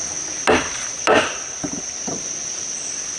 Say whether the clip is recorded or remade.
recorded